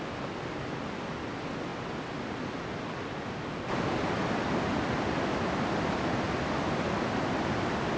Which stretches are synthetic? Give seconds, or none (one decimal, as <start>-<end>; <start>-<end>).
none